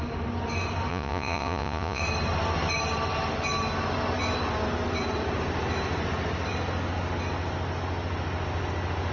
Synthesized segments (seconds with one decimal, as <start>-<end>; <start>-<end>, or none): 0.9-2.0